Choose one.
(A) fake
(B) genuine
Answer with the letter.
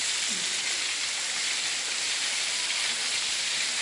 B